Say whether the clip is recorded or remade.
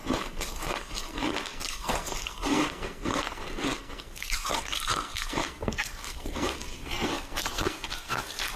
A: remade